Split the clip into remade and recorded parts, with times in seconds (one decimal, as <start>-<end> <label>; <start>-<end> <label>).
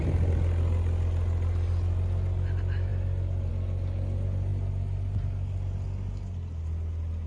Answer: 0.0-7.3 recorded